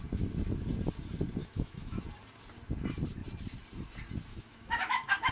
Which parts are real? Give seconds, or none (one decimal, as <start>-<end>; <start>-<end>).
0.0-1.4; 2.0-4.3